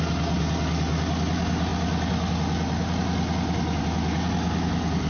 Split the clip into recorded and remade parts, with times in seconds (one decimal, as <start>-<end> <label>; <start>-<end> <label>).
0.0-5.1 recorded